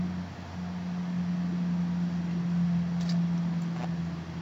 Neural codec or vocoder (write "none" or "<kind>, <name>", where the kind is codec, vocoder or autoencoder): none